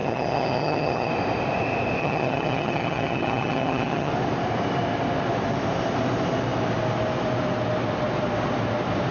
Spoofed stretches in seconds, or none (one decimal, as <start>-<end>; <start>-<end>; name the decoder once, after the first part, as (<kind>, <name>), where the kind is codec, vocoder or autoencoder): 0.0-1.1 (vocoder, HiFi-GAN); 2.0-4.1